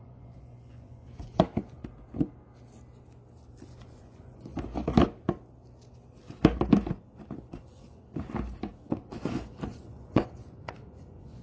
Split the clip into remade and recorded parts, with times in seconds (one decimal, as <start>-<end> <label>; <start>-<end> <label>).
0.0-1.8 remade; 1.8-3.7 recorded; 3.7-4.5 remade; 4.5-7.4 recorded; 7.4-8.0 remade; 8.0-8.9 recorded; 8.9-11.4 remade